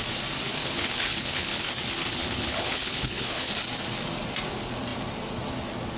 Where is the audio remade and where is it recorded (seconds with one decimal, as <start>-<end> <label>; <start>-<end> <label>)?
0.0-0.6 recorded; 0.6-1.6 remade; 1.6-2.2 recorded; 2.2-3.5 remade; 3.5-6.0 recorded